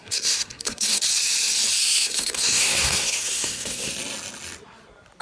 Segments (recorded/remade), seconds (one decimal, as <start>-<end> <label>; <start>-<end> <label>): 0.0-1.0 remade; 1.0-1.8 recorded; 1.8-3.9 remade; 3.9-5.2 recorded